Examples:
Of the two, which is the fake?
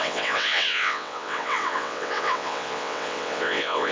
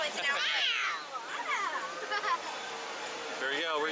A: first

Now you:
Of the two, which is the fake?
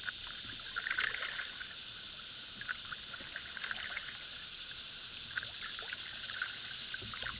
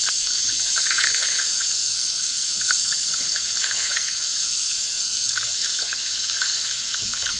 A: second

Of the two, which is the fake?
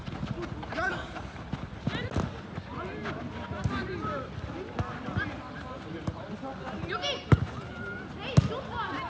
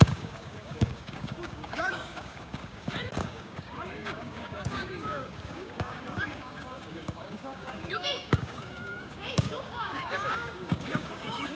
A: second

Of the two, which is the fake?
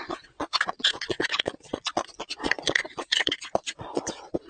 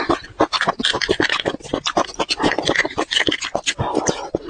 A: first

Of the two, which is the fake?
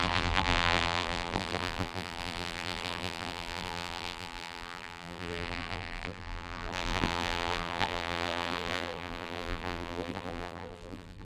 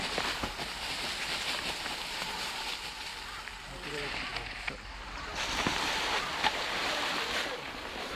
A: first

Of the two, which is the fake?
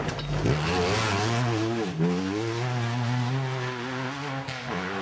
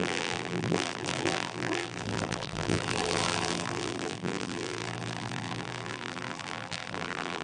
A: second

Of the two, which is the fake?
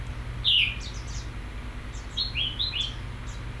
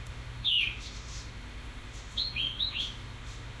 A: second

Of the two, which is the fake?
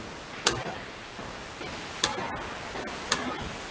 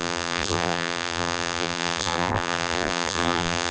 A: second